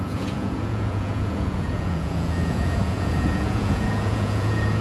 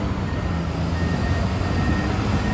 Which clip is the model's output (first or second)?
first